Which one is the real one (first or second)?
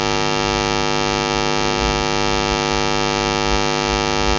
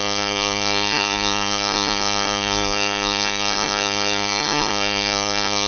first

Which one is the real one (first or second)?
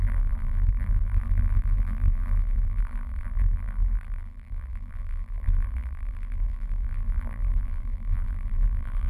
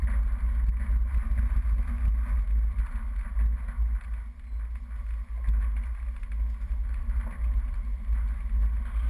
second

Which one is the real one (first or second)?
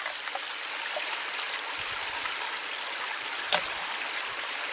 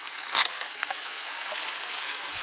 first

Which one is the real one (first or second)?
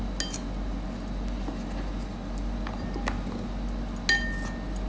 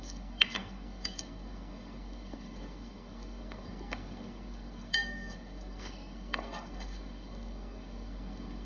first